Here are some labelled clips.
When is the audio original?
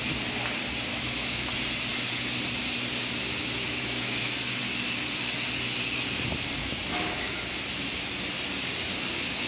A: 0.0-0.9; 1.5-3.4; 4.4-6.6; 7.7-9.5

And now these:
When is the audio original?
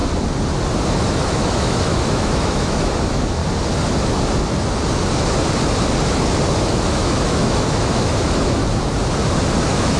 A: 0.0-0.9; 3.4-6.6; 8.6-9.6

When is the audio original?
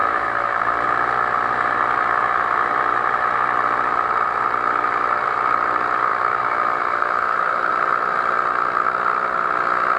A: 0.6-6.1; 7.7-10.0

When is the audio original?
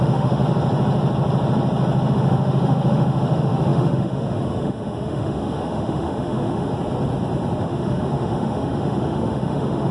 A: 0.4-2.1; 6.7-7.6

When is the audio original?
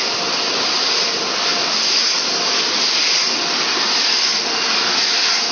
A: 0.0-5.5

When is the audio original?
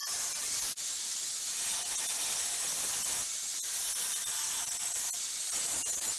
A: 0.0-6.2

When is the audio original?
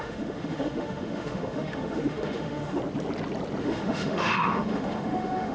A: 2.8-3.6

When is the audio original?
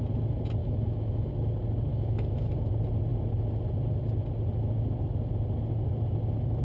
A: 0.0-0.6; 1.3-1.9; 2.5-6.6